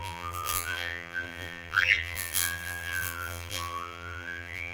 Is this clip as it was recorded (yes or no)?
no